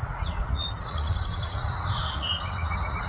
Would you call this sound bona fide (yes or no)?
no